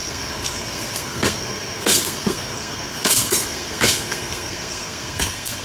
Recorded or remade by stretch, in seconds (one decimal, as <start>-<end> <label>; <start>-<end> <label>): 0.0-5.6 remade